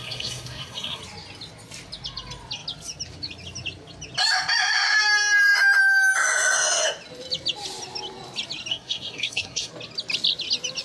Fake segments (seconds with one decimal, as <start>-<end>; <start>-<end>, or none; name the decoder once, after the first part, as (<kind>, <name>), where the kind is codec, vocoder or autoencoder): 0.0-1.0 (codec, SNAC); 8.7-9.7

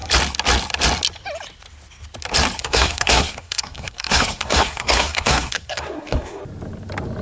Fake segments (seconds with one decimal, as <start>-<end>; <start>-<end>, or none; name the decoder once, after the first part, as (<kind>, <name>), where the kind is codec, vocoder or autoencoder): 2.6-6.4 (codec, SNAC)

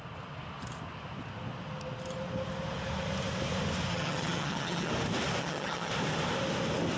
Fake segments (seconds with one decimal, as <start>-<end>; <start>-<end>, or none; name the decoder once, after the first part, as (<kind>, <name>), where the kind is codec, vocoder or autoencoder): 3.9-4.9 (vocoder, HiFi-GAN); 5.4-5.9

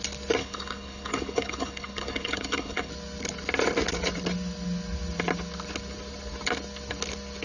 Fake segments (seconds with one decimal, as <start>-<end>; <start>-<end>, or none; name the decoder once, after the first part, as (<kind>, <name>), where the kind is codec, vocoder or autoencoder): 0.4-2.9 (codec, HILCodec)

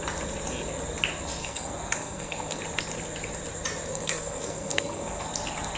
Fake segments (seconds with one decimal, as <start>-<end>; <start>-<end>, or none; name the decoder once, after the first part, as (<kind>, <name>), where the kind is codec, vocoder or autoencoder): 1.4-2.6 (codec, SNAC); 3.9-5.2